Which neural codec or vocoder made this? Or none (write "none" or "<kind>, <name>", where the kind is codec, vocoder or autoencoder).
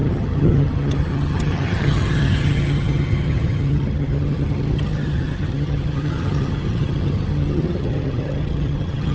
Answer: vocoder, HiFi-GAN